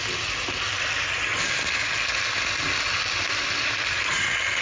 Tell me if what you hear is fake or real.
real